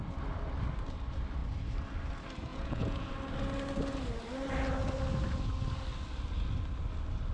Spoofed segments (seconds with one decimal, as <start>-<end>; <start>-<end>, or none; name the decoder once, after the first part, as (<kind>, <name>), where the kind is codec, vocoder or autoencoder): 2.5-3.1 (vocoder, Vocos)